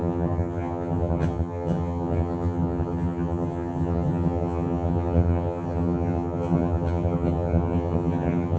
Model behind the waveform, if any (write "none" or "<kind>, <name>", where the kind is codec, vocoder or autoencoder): vocoder, HiFi-GAN